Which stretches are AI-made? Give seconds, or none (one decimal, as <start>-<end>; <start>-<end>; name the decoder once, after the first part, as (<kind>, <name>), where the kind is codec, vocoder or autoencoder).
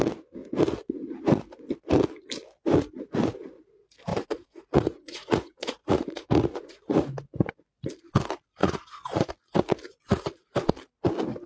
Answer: 4.1-7.5 (vocoder, Vocos); 8.6-9.3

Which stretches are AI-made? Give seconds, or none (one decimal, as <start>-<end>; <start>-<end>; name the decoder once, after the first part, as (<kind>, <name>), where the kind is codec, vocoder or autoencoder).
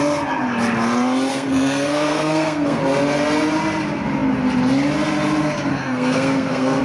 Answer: 1.3-2.8 (codec, SNAC); 5.7-6.8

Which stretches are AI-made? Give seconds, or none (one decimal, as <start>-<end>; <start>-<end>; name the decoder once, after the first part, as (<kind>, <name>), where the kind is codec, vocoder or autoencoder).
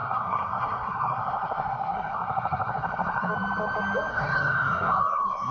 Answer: 0.0-3.3 (codec, SNAC); 4.1-5.5